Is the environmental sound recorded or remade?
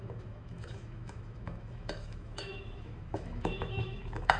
remade